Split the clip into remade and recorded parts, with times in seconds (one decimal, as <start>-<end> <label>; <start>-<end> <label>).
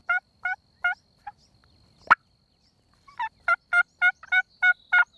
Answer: 0.0-5.2 recorded